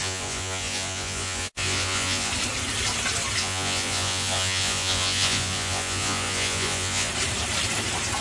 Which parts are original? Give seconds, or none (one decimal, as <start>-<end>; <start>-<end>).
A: 2.3-3.4; 7.1-8.2